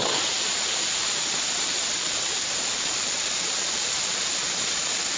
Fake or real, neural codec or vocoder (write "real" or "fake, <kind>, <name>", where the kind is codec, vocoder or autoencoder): real